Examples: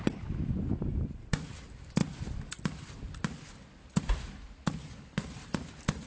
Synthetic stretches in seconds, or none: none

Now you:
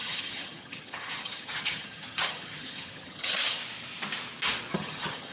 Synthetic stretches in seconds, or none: 0.0-3.6 (vocoder, HiFi-GAN); 4.7-5.3

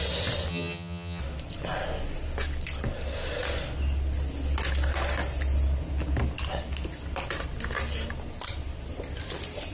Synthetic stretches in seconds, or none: 0.5-1.2 (vocoder, HiFi-GAN)